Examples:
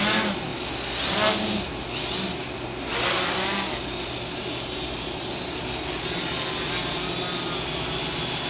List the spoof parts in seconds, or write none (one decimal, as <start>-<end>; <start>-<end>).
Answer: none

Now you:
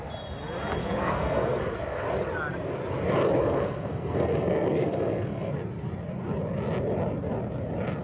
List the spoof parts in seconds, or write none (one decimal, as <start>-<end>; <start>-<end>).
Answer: 0.8-1.6; 3.4-5.5

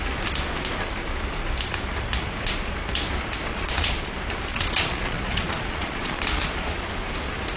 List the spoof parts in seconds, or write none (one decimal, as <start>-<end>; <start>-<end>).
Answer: 3.5-4.1; 4.5-6.9

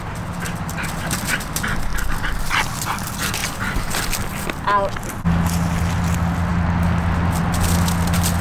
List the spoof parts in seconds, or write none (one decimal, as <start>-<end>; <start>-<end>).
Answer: none